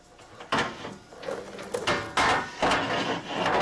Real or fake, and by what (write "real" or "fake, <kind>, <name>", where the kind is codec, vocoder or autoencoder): real